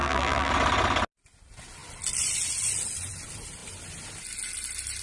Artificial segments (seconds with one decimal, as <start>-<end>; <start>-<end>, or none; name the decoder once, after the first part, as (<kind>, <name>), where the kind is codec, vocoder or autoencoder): 0.0-0.5 (vocoder, BigVGAN v2)